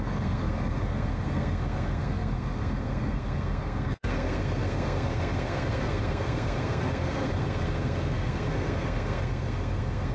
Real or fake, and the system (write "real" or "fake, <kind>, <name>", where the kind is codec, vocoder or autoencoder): fake, codec, SNAC